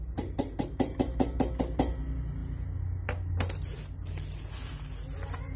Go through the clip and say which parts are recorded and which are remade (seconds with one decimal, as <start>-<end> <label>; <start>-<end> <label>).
0.0-5.6 recorded